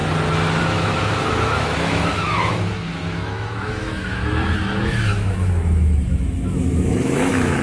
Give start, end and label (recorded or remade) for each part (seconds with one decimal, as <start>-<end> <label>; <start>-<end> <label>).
0.0-0.6 recorded; 0.6-7.6 remade